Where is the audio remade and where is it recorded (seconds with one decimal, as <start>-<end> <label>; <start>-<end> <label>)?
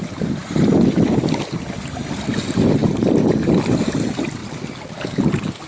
0.0-0.4 recorded; 0.4-2.4 remade; 2.4-2.8 recorded; 2.8-3.9 remade; 3.9-5.7 recorded